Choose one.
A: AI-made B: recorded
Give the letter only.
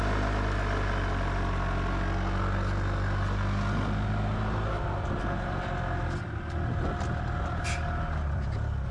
B